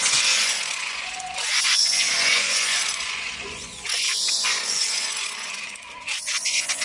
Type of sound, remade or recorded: remade